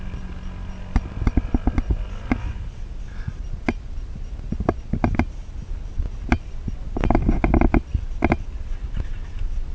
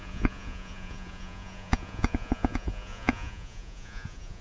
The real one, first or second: first